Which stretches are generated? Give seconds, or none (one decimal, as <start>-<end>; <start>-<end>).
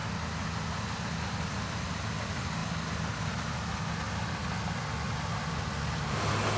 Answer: none